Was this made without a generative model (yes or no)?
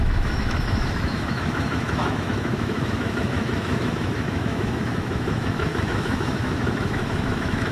no